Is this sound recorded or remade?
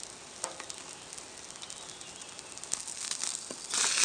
recorded